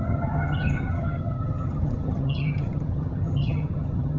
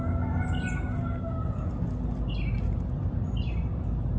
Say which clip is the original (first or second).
second